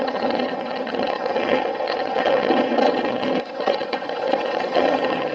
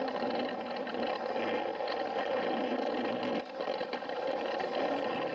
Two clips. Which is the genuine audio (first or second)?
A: second